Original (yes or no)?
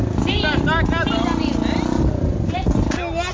yes